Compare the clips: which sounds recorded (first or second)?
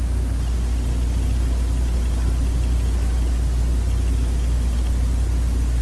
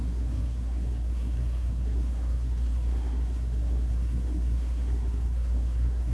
first